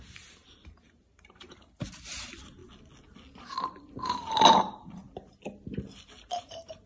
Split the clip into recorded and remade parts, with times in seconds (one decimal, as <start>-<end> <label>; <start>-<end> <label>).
0.0-2.6 remade; 2.6-3.8 recorded; 3.8-5.0 remade; 5.0-6.3 recorded; 6.3-6.9 remade